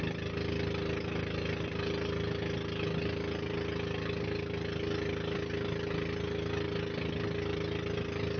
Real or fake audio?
real